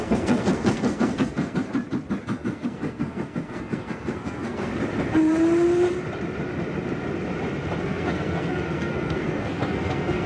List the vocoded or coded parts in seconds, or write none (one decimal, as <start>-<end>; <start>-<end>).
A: 0.0-1.7; 2.2-4.7; 7.8-10.3